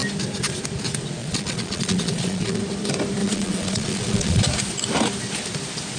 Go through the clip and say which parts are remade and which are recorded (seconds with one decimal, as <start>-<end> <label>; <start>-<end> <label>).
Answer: 0.0-1.2 recorded; 1.2-2.6 remade; 2.6-3.2 recorded; 3.2-4.4 remade; 4.4-6.0 recorded